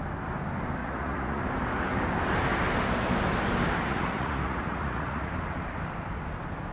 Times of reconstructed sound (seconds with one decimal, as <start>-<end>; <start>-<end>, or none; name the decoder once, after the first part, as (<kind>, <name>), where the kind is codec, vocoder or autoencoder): 0.8-1.4 (vocoder, Vocos); 3.9-5.3